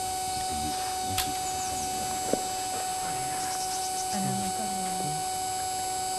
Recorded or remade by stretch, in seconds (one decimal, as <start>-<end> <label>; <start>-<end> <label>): 0.0-6.2 recorded